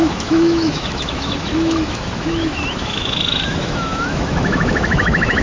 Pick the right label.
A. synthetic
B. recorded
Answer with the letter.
A